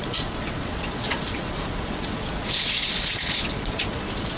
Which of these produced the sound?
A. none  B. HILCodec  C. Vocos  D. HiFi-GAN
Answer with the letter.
C